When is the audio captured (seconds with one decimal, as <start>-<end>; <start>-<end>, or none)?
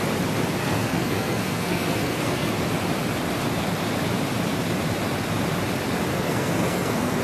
0.0-0.6; 2.5-6.1